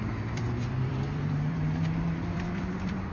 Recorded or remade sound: remade